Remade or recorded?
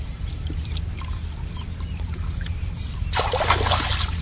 recorded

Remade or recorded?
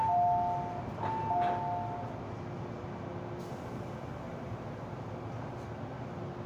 recorded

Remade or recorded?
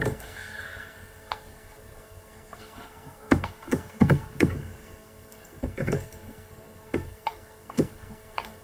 remade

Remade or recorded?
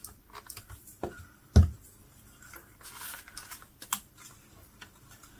recorded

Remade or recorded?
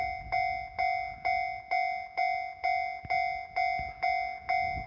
recorded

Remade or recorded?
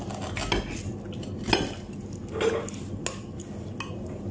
recorded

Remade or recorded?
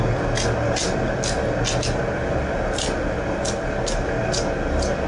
recorded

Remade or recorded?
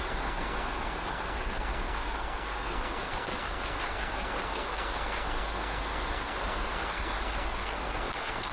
remade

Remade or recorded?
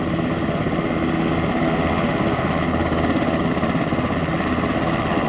recorded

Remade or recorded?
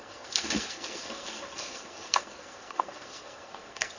remade